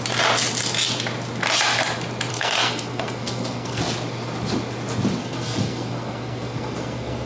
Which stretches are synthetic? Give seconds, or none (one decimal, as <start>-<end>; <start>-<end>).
2.3-3.8; 5.2-7.3